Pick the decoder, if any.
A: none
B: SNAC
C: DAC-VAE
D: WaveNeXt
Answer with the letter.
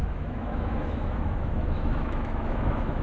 C